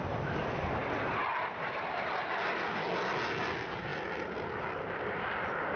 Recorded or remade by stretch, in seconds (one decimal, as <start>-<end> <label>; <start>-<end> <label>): 0.0-5.8 recorded